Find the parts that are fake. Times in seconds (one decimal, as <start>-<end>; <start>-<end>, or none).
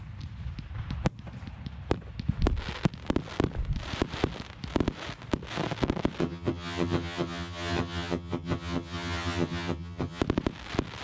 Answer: 6.2-10.2